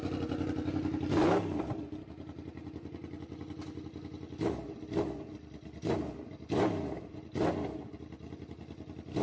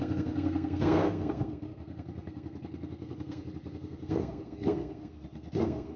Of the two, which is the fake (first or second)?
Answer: second